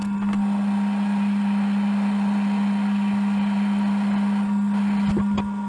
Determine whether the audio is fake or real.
real